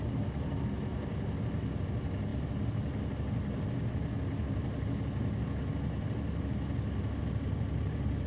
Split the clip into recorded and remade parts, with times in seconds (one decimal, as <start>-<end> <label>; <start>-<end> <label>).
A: 0.0-8.3 recorded